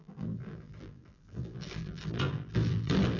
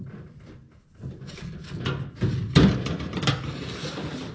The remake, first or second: first